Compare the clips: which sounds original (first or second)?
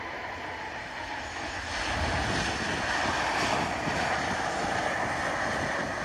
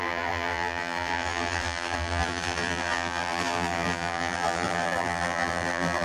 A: first